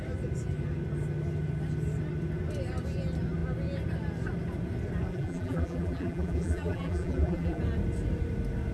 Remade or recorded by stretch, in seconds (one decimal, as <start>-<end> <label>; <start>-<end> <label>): 0.0-5.1 recorded; 5.1-7.6 remade; 7.6-8.7 recorded